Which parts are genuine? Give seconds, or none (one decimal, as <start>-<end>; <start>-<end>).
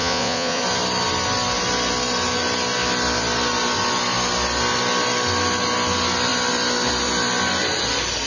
0.6-8.3